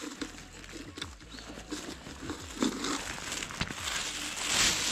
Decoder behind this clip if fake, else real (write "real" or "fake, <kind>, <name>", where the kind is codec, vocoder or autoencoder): real